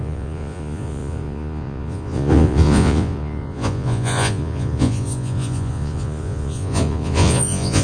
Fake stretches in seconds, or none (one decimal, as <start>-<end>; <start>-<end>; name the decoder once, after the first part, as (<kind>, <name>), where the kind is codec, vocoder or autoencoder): 0.0-7.8 (vocoder, Vocos)